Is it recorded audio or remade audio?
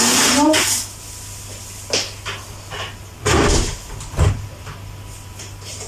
recorded